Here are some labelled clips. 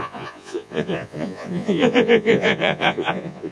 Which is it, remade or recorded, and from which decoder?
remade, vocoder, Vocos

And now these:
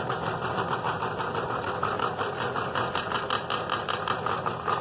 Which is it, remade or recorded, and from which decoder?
recorded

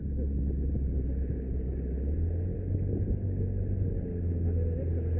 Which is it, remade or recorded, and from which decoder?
recorded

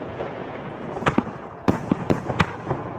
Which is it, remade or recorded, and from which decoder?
remade, vocoder, Vocos